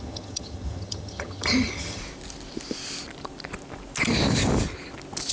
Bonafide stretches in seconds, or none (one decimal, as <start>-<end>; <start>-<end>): 2.0-5.3